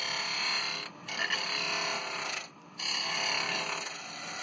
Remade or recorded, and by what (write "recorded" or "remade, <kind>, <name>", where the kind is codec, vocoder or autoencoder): recorded